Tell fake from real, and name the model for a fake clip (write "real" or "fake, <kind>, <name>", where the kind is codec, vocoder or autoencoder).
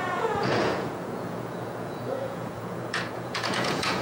fake, vocoder, Vocos